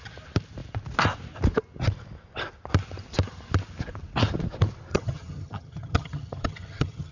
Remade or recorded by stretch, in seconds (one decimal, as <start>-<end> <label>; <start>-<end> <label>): 0.0-4.9 recorded; 4.9-7.1 remade